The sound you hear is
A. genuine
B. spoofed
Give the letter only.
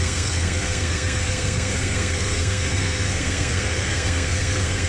B